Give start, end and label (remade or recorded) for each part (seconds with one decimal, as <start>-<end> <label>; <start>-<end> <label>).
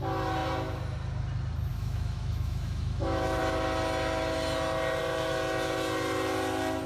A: 0.0-1.7 recorded; 1.7-3.4 remade; 3.4-6.9 recorded